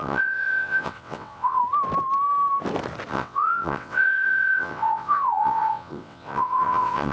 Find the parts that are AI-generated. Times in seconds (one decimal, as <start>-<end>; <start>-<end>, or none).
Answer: 0.0-1.6; 3.1-7.1